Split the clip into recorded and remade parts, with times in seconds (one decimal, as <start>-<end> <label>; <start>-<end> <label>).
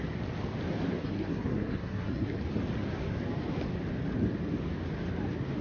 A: 0.0-1.0 recorded; 1.0-2.4 remade; 2.4-5.6 recorded